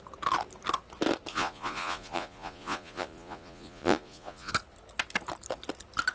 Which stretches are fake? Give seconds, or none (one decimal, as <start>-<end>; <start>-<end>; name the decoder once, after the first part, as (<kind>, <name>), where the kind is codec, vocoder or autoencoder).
1.3-4.5 (vocoder, Vocos)